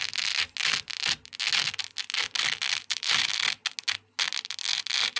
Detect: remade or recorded recorded